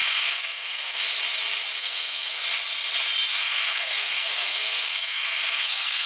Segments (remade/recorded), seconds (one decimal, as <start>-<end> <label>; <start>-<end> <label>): 0.0-1.0 remade; 1.0-1.8 recorded; 1.8-2.4 remade; 2.4-3.3 recorded; 3.3-6.1 remade